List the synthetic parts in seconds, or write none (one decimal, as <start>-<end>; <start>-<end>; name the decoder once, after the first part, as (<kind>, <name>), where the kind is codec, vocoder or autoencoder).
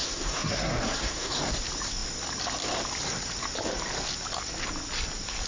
0.0-1.4 (codec, SNAC)